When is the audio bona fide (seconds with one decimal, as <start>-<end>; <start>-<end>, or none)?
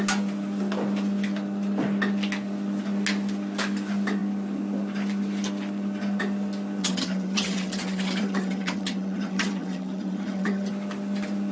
0.0-6.8; 10.7-11.5